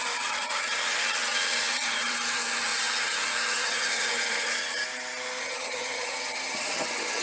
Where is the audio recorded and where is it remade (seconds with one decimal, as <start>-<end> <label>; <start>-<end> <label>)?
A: 0.0-4.8 remade; 4.8-5.4 recorded; 5.4-7.2 remade